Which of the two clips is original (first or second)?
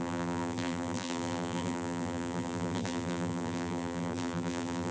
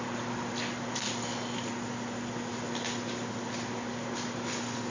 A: second